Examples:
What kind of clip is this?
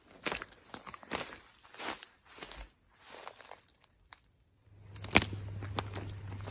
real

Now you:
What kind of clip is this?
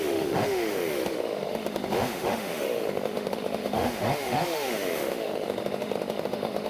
fake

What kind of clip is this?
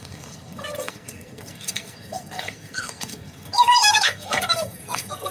fake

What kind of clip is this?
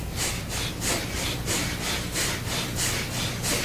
real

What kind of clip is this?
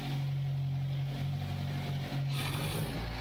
real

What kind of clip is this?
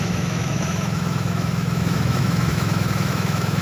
fake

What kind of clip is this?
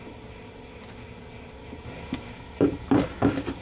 real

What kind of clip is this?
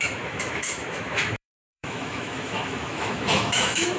fake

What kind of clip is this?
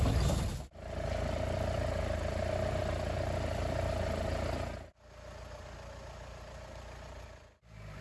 real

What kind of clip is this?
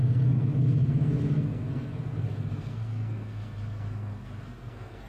fake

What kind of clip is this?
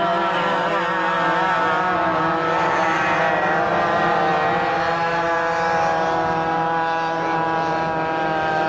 real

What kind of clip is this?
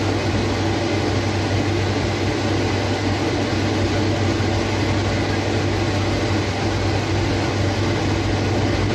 real